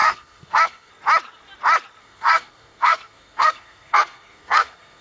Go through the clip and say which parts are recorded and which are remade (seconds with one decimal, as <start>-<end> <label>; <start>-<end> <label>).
0.0-0.9 remade; 0.9-2.0 recorded; 2.0-5.0 remade